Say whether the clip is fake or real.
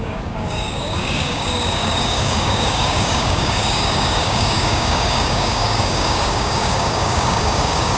fake